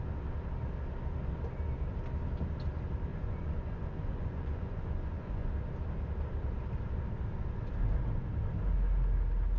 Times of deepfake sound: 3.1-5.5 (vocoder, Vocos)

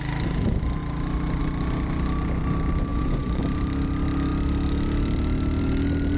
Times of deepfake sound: 2.9-3.4 (vocoder, Vocos)

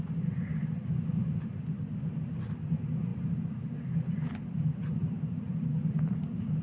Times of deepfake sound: none

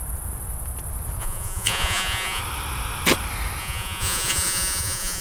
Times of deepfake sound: 1.2-2.4 (vocoder, Vocos); 3.6-5.2